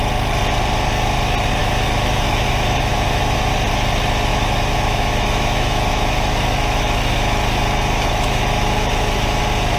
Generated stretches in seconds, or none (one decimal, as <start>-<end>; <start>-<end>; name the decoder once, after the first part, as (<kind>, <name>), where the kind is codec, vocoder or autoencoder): 1.6-3.5 (autoencoder, DAC-VAE); 4.3-9.4